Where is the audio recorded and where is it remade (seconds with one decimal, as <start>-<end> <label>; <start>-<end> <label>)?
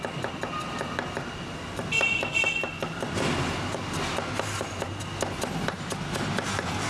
0.0-6.9 recorded